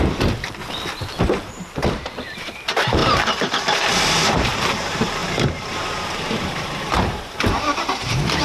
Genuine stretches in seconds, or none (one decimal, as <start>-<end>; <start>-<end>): 0.6-1.2